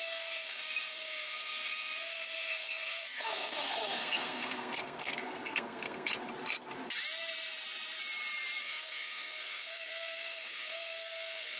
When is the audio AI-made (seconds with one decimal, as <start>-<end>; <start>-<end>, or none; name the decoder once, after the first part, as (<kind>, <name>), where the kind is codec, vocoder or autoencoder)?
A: 0.0-6.1 (codec, SNAC); 8.6-11.6